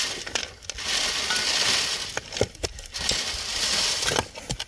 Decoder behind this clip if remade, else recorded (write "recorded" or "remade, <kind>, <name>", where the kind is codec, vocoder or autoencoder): recorded